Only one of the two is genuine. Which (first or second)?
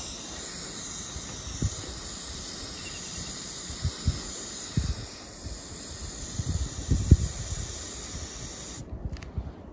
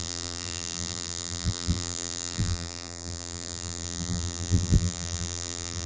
first